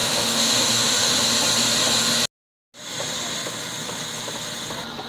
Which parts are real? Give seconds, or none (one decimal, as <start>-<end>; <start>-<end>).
1.3-5.1